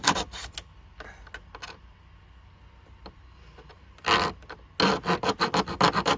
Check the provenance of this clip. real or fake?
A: real